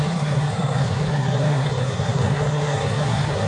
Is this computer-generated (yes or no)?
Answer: yes